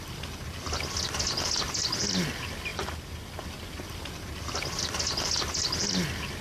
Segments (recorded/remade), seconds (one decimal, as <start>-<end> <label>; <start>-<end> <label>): 0.0-6.4 recorded